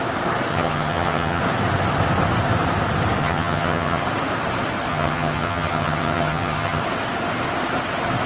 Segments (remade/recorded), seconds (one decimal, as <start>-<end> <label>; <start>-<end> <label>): 0.0-0.5 recorded; 0.5-1.4 remade; 1.4-3.2 recorded; 3.2-4.0 remade; 4.0-4.9 recorded; 4.9-6.8 remade; 6.8-8.3 recorded